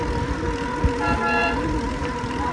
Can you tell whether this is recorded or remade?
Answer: recorded